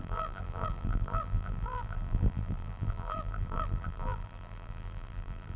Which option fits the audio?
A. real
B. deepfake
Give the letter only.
B